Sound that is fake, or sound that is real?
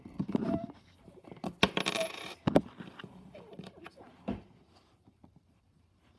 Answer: real